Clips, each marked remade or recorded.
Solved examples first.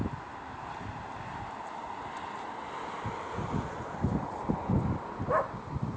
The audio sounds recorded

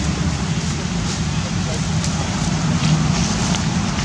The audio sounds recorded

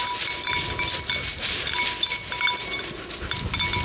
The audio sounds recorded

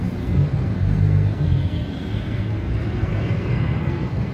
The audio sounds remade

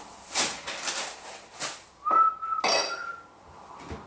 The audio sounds recorded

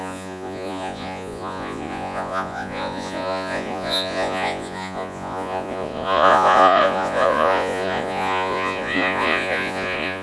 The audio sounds remade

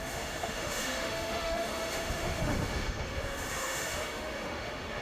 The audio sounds remade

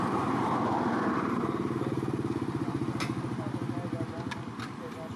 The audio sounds recorded